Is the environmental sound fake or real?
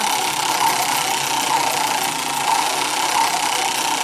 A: real